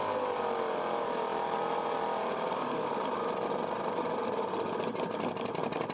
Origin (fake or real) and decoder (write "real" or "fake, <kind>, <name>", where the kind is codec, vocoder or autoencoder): real